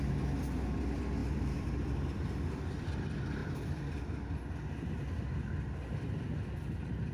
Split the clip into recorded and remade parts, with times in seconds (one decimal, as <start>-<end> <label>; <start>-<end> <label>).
0.0-1.2 recorded; 1.2-3.0 remade; 3.0-3.4 recorded; 3.4-4.0 remade; 4.0-7.1 recorded